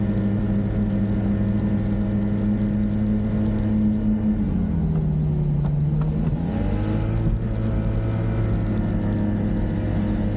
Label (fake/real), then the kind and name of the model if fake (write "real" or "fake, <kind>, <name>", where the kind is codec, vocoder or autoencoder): real